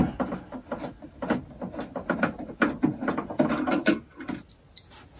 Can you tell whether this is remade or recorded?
recorded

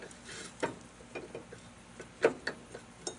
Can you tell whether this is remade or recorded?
recorded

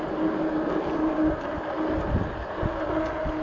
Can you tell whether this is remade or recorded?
recorded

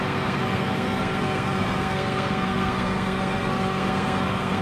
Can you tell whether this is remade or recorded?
remade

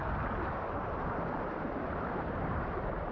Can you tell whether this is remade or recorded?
recorded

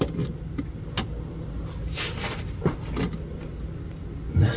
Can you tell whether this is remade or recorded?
recorded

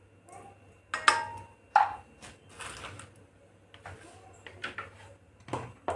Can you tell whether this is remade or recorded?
recorded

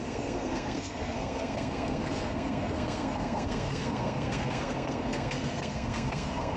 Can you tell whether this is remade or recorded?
remade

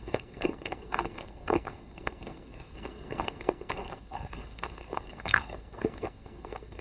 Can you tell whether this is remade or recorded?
remade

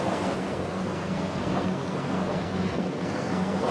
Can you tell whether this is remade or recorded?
remade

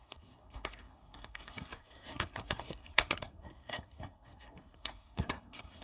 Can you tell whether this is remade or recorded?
remade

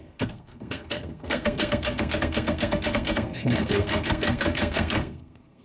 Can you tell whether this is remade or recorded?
remade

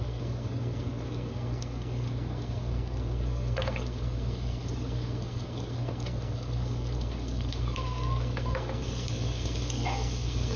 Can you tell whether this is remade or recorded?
remade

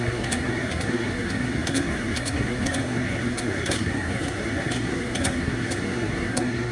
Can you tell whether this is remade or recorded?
remade